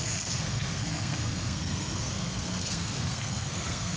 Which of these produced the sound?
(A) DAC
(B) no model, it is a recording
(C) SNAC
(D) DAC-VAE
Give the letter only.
C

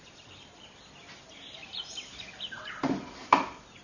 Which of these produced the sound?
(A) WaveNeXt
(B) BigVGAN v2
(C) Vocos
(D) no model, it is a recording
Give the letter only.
B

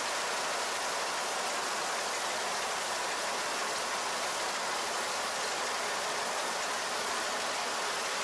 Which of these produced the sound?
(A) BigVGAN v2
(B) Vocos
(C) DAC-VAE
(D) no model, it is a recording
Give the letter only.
D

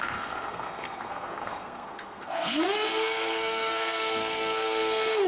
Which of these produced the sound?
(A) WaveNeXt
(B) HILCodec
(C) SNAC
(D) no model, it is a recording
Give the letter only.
C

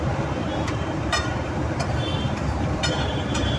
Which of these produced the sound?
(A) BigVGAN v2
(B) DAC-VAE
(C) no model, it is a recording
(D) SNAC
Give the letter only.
A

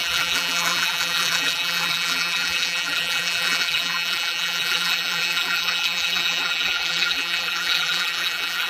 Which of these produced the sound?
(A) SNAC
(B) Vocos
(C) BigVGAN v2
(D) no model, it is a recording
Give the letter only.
C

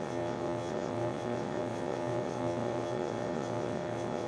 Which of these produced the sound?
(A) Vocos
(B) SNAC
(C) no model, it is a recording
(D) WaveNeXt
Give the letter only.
D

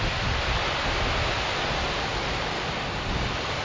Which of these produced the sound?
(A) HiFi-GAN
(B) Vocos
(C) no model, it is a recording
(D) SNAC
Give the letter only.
C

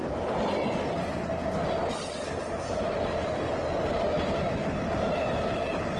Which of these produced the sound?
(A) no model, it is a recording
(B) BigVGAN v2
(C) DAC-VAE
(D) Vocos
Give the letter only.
A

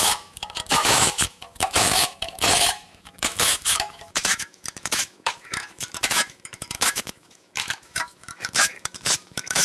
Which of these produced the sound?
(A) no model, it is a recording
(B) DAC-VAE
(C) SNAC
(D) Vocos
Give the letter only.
B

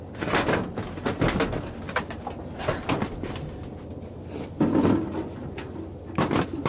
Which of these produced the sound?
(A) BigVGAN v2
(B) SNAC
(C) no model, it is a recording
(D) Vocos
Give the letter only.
C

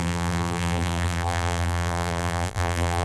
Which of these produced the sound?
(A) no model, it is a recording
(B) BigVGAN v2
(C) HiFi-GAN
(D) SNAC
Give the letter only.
B